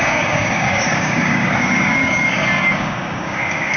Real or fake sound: fake